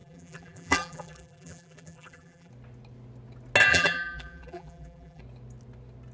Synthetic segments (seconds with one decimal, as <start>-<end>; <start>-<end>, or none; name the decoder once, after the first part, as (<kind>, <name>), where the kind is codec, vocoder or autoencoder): 0.0-2.5 (vocoder, BigVGAN v2); 3.7-5.2